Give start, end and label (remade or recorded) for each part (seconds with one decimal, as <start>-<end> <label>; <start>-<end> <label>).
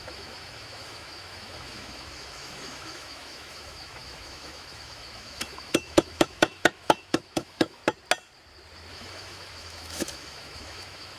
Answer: 0.0-7.8 remade; 7.8-8.9 recorded; 8.9-11.2 remade